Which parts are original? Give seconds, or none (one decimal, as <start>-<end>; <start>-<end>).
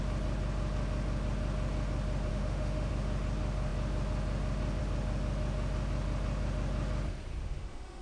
0.0-2.3; 2.9-7.4